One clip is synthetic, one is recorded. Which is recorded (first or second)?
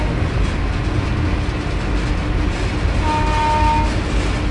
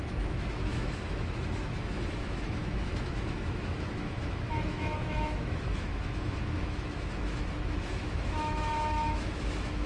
first